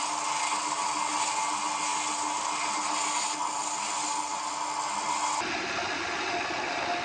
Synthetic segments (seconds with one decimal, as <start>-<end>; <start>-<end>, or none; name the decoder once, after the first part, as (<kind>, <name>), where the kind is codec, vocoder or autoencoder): none